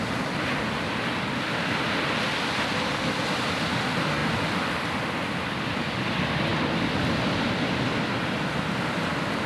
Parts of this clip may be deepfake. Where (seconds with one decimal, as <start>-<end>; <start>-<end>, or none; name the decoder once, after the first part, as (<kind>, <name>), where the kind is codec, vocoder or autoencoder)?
none